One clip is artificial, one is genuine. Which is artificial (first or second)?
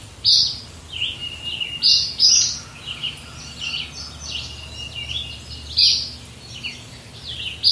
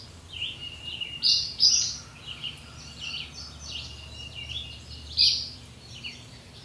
second